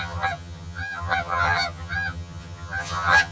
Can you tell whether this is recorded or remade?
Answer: remade